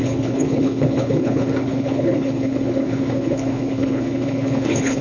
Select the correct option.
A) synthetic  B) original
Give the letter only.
A